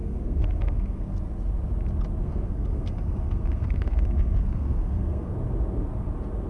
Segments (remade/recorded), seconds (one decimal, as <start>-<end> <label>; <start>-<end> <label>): 0.0-1.1 remade; 1.1-2.2 recorded; 2.2-5.3 remade; 5.3-6.5 recorded